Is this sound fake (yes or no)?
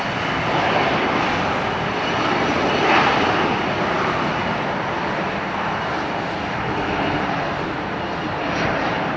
no